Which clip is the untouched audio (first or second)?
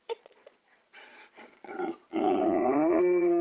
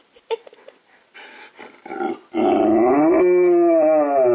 second